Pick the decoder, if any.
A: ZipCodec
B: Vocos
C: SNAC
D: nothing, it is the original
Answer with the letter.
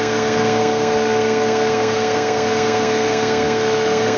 C